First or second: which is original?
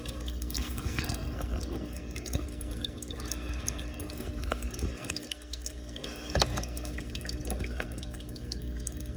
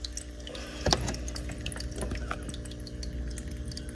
second